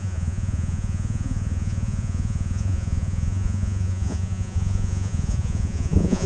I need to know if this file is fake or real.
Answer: fake